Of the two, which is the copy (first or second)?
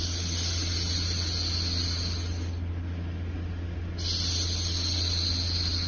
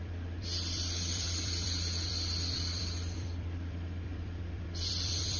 second